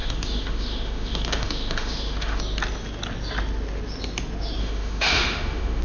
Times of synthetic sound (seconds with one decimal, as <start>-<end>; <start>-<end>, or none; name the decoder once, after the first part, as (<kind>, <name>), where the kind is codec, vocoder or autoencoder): 0.0-2.4 (autoencoder, DAC-VAE); 4.6-5.8